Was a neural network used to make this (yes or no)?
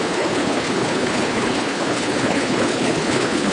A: yes